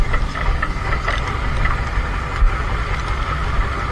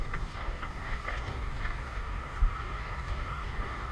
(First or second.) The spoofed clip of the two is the second